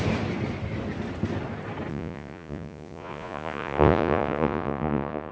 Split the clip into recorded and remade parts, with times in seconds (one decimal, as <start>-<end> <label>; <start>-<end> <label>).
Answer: 0.0-1.9 recorded; 1.9-5.3 remade